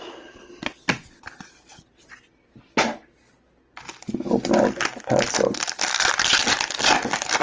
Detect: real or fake real